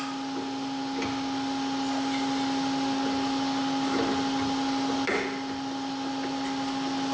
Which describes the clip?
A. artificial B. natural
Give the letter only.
B